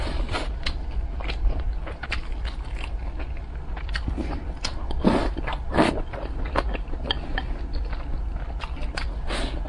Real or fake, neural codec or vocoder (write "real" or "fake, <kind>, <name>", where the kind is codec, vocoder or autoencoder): real